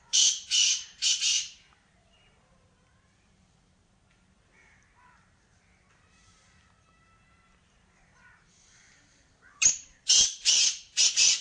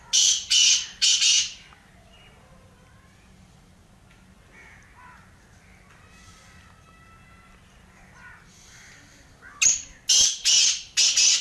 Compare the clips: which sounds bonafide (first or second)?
second